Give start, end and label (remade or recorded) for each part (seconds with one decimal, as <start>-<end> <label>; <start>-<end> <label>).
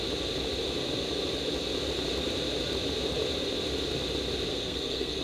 0.0-4.5 recorded; 4.5-5.2 remade